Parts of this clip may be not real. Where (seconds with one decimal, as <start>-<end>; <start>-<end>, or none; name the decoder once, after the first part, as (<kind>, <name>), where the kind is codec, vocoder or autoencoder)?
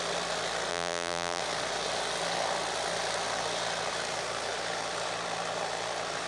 0.7-1.4 (vocoder, BigVGAN v2)